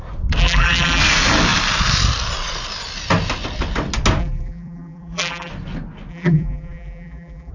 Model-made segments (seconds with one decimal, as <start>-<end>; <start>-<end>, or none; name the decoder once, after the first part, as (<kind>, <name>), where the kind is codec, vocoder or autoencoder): 0.4-1.0 (vocoder, BigVGAN v2); 4.2-5.5; 6.1-7.5